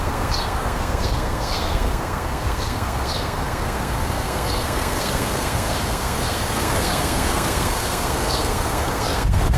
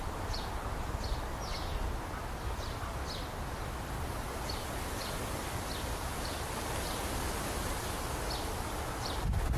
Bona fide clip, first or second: second